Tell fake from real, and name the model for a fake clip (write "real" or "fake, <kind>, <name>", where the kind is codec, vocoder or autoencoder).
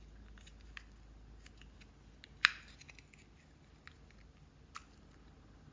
real